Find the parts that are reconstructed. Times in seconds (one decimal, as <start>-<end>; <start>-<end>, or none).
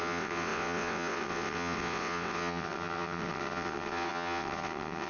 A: 0.0-5.1